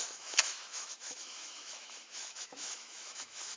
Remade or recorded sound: remade